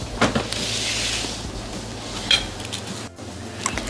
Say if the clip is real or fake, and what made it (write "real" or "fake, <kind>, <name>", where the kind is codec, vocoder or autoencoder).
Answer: real